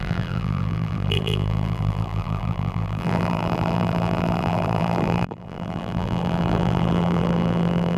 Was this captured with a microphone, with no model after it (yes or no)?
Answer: no